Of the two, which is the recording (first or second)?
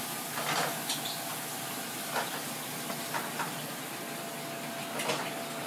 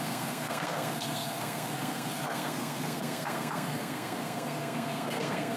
first